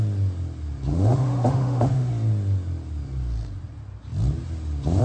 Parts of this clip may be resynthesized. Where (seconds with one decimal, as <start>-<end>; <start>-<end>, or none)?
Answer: 0.9-2.1